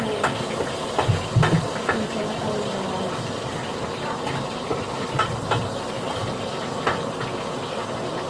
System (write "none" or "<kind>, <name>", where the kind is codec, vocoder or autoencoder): none